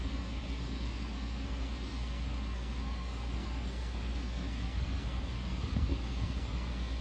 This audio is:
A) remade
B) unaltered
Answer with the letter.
A